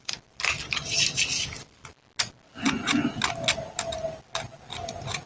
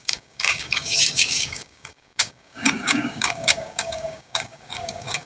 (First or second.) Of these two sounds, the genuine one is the first